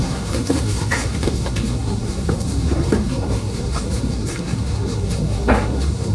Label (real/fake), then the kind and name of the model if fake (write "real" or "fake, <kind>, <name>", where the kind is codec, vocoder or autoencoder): fake, codec, SNAC